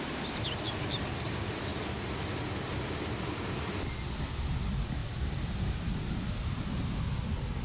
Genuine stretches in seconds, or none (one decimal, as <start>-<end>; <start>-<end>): 0.0-5.0; 7.0-7.6